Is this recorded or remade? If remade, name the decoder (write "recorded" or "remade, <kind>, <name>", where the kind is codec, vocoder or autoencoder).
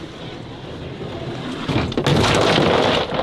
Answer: recorded